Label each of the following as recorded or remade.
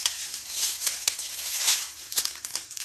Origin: remade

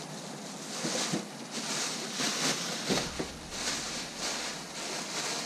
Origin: recorded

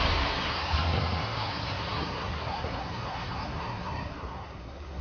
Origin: remade